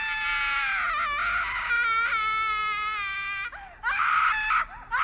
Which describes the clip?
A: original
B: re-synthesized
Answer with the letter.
A